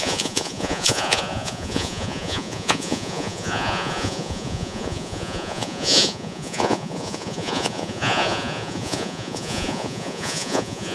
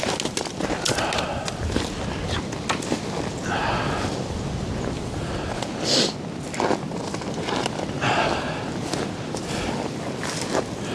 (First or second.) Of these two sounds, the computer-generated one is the first